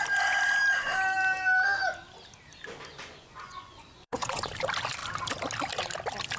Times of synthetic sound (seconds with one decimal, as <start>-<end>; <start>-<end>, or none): 2.9-4.4